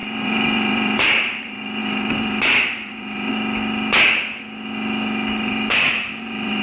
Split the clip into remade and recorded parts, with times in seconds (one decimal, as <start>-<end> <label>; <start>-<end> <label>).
0.0-3.3 remade; 3.3-5.3 recorded; 5.3-6.6 remade